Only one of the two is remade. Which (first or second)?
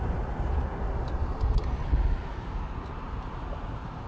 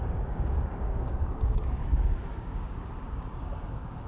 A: second